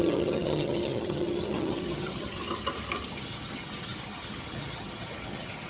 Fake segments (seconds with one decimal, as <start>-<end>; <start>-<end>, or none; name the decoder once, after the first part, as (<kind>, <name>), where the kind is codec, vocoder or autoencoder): 0.0-2.4 (vocoder, HiFi-GAN); 3.1-5.7